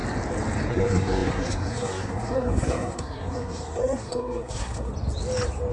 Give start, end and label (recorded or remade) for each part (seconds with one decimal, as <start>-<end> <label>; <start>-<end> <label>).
0.0-0.7 recorded; 0.7-4.9 remade; 4.9-5.7 recorded